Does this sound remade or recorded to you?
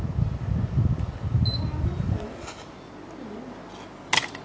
recorded